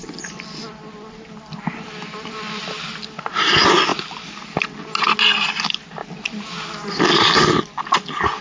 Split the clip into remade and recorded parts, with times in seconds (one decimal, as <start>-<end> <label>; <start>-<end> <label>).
0.0-8.4 recorded